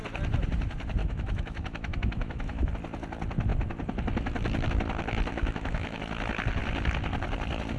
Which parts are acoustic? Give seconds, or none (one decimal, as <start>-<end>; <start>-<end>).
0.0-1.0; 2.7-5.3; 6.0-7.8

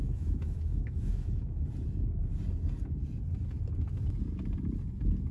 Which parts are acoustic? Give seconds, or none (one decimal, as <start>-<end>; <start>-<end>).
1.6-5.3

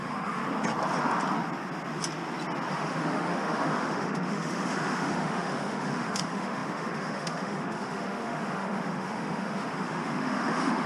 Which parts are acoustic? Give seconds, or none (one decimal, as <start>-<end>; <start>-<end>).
0.4-2.7